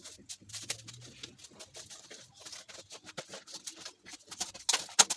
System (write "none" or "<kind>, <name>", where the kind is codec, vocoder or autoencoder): none